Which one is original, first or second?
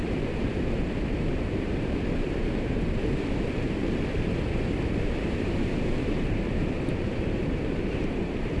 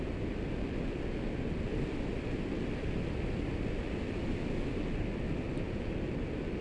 second